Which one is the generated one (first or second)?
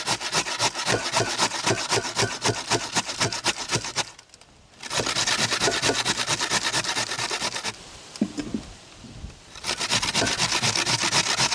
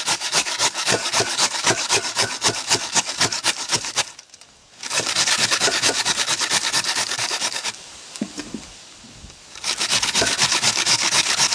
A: second